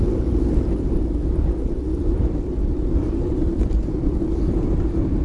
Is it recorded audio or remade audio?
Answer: recorded